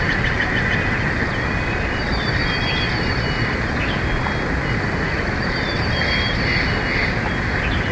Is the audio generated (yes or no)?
no